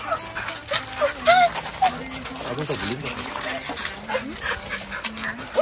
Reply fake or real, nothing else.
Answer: real